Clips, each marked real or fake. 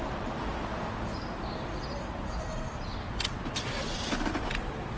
real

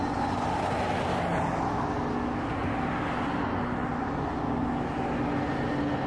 real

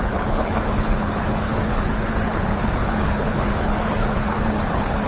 fake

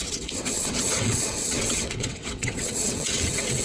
fake